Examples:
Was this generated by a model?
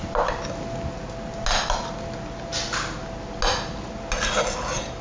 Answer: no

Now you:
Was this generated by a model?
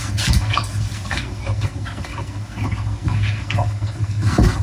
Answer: yes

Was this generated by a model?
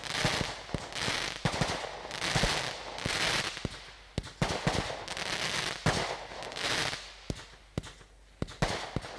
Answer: no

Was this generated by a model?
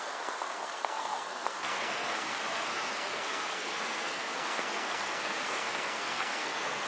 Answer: yes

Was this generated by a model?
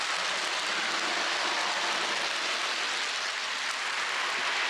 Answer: no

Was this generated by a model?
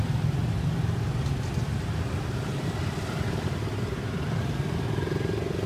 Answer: no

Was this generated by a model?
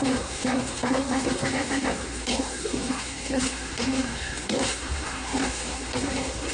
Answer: yes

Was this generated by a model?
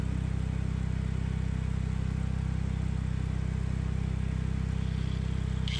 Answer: no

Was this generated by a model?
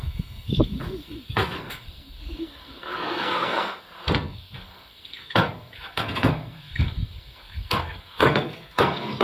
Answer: yes